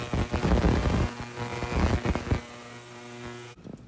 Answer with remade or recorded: recorded